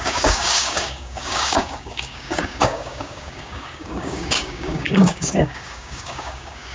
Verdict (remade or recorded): remade